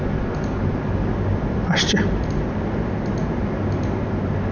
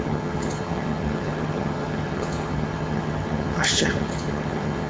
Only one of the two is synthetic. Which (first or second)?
second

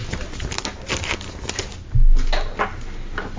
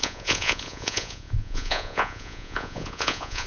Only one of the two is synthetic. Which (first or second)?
second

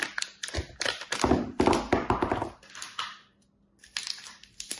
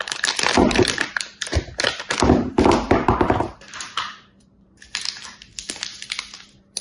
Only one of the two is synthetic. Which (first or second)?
second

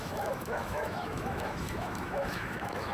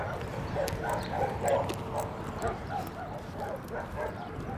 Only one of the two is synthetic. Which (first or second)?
first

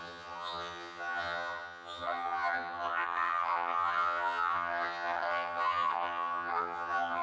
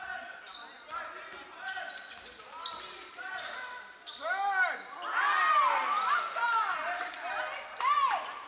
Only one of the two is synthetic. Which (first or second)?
first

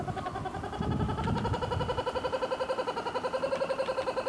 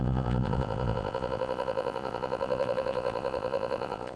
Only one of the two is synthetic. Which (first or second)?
second